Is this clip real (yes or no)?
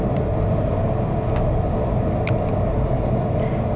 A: yes